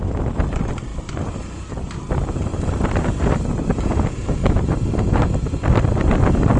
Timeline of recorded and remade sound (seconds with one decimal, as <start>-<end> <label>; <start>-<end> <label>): 0.0-0.9 remade; 0.9-1.7 recorded; 1.7-2.5 remade; 2.5-6.0 recorded; 6.0-6.6 remade